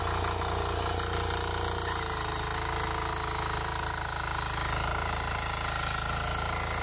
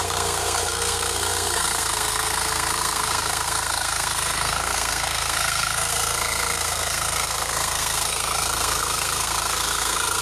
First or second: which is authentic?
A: first